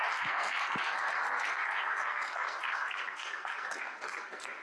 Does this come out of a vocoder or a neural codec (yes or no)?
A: yes